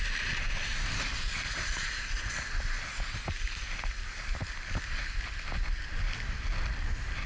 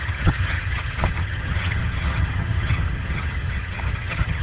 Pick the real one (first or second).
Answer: first